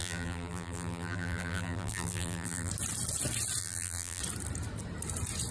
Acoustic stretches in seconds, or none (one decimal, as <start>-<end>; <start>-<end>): 2.7-3.6; 4.2-5.5